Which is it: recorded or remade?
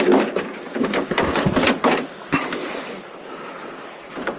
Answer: recorded